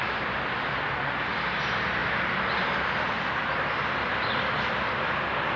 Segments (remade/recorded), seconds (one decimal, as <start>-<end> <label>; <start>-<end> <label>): 0.0-5.6 recorded